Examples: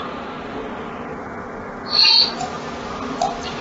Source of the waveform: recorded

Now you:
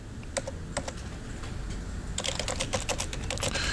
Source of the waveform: recorded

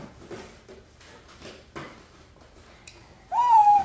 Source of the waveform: recorded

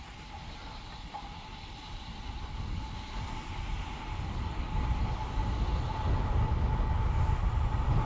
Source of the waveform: recorded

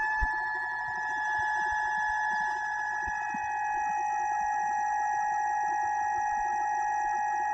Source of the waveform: recorded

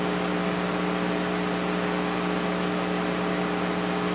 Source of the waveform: recorded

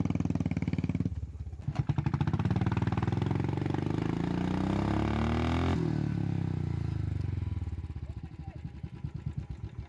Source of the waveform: recorded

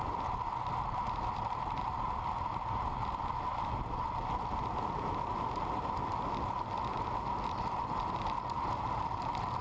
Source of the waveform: recorded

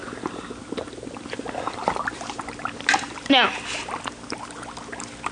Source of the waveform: recorded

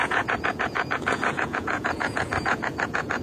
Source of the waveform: remade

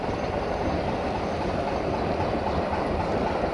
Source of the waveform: recorded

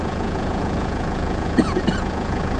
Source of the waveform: remade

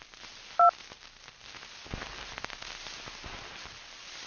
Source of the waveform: recorded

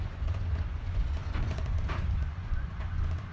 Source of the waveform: remade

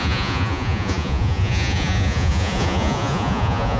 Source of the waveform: remade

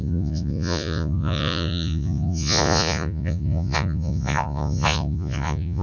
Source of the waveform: remade